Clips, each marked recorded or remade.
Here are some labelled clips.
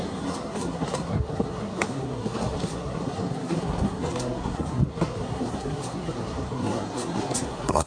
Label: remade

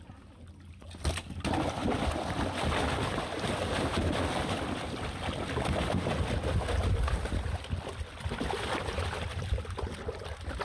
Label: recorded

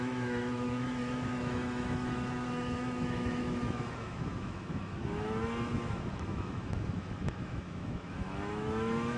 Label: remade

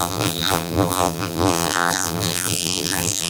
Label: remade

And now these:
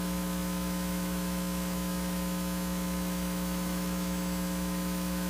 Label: remade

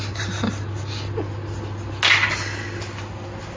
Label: recorded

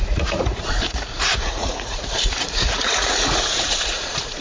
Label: remade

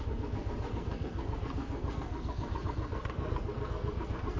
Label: remade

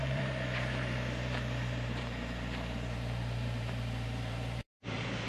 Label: remade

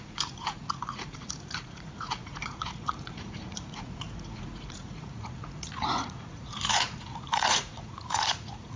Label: remade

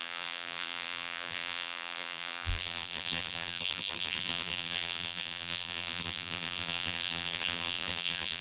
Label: remade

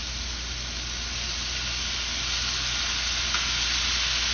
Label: recorded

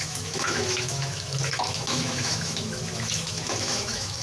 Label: remade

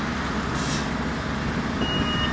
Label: recorded